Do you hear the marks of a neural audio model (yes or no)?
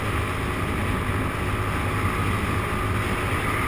no